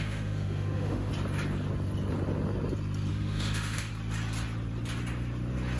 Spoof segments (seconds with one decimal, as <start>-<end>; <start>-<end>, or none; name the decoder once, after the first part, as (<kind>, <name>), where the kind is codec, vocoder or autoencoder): 0.0-1.1 (autoencoder, DAC-VAE); 3.1-3.9